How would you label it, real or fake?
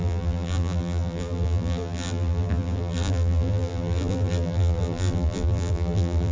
fake